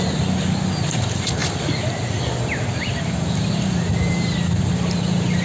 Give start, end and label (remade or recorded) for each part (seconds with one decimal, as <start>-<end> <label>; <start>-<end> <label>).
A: 0.0-5.4 recorded